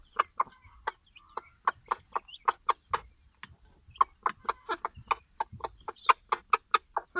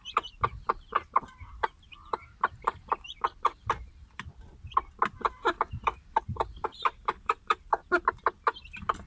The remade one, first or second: second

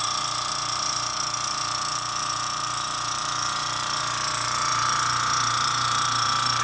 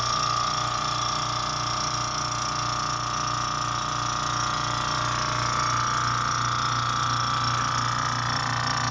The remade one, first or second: first